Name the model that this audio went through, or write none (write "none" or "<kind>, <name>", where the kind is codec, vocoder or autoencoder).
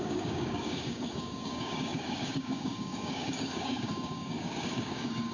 codec, DAC